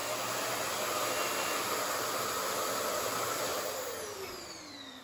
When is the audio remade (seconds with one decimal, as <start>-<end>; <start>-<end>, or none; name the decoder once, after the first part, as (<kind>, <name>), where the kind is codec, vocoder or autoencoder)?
3.5-5.0 (vocoder, BigVGAN v2)